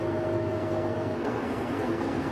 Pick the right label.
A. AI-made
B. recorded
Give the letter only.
A